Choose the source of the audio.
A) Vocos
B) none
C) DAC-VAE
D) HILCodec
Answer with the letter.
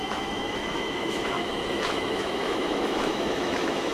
C